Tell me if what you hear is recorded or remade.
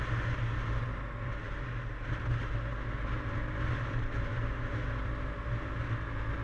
recorded